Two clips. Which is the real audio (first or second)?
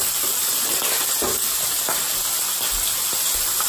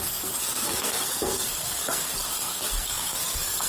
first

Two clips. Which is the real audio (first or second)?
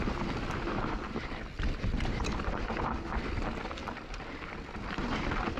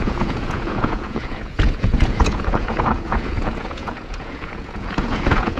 first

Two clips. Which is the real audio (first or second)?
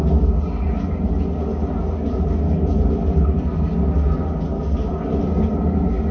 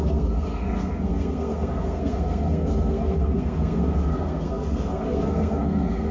first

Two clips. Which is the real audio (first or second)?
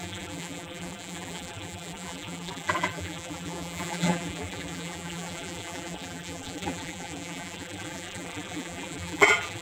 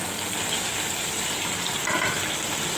second